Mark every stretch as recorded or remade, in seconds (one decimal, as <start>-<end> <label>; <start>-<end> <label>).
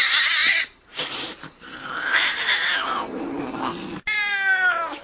0.0-0.4 recorded; 0.4-3.4 remade; 3.4-5.0 recorded